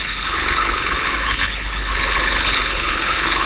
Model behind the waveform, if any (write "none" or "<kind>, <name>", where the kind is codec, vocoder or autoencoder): codec, HILCodec